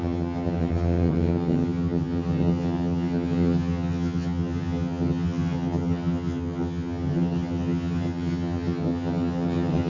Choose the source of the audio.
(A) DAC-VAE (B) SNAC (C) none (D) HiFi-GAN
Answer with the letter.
D